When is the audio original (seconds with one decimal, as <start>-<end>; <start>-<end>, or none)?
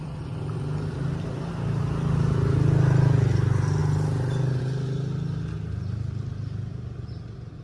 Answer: 0.0-7.6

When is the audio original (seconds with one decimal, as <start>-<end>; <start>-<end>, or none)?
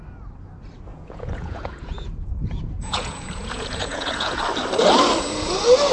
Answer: 0.0-0.9; 4.4-5.9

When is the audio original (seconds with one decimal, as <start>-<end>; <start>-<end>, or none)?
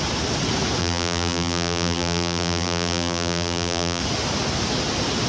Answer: 0.0-0.8; 4.0-5.3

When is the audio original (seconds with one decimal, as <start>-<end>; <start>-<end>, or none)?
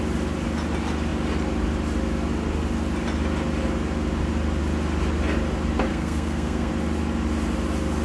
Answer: 0.0-5.9; 6.7-8.0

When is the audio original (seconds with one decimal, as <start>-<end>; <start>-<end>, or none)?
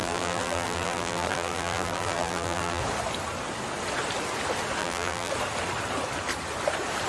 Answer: 2.8-4.8; 5.3-7.1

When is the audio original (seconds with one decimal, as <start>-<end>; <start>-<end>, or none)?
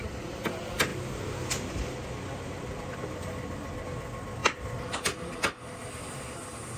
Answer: 0.0-6.8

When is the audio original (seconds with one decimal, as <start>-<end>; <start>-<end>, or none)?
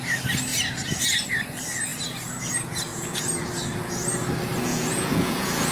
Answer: 0.0-2.9; 3.6-4.7